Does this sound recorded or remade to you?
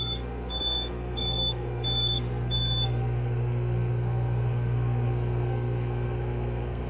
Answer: remade